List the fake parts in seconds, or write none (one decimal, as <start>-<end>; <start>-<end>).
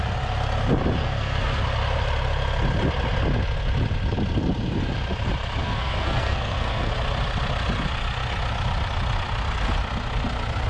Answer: 1.0-1.6; 5.6-6.9